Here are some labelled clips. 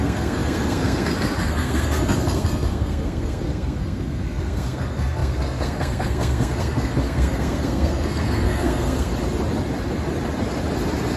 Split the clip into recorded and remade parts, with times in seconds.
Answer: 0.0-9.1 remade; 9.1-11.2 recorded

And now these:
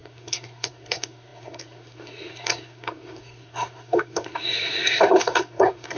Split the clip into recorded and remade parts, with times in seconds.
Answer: 0.0-6.0 remade

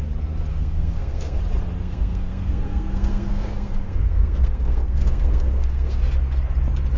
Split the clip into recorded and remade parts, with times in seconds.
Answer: 0.0-0.5 recorded; 0.5-1.4 remade; 1.4-1.8 recorded; 1.8-6.0 remade; 6.0-7.0 recorded

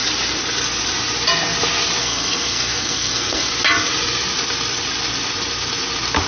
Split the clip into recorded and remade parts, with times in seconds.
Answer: 0.0-2.0 recorded; 2.0-3.5 remade; 3.5-6.3 recorded

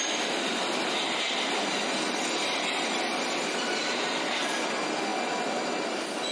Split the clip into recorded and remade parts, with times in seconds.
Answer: 0.0-6.3 recorded